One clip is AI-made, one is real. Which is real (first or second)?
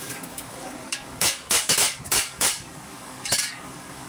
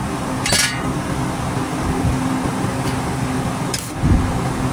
second